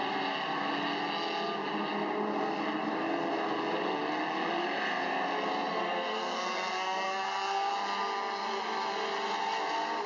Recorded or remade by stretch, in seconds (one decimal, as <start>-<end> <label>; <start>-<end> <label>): 0.0-5.7 recorded; 5.7-7.7 remade; 7.7-10.1 recorded